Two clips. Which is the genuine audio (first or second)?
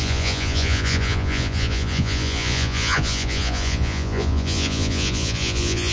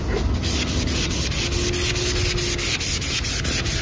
second